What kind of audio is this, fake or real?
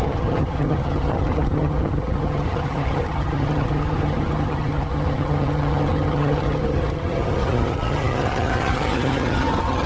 fake